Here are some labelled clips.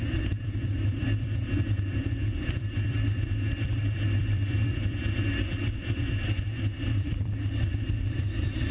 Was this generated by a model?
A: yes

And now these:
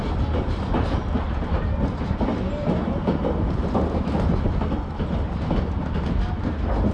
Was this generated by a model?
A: no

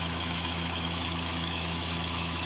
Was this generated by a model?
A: yes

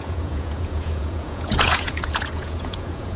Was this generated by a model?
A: yes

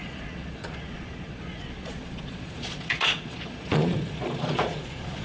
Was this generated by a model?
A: yes